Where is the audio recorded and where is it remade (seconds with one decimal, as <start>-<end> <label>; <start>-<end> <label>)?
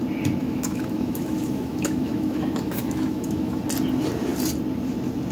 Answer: 0.0-0.4 recorded; 0.4-3.6 remade; 3.6-5.3 recorded